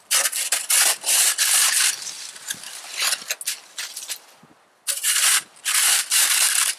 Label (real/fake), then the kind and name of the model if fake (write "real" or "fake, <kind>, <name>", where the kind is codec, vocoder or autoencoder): real